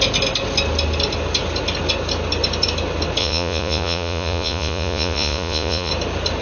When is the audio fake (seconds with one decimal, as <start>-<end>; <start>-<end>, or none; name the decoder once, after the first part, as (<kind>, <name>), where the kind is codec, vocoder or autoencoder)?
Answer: 3.2-5.9 (vocoder, Vocos)